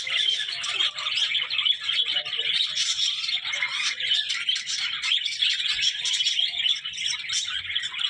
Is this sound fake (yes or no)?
no